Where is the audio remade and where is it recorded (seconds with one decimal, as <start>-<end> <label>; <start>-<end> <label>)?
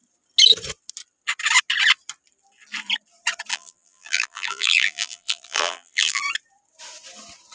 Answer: 0.0-3.5 recorded; 3.5-6.2 remade; 6.2-7.5 recorded